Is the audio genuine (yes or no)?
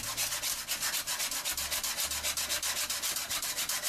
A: yes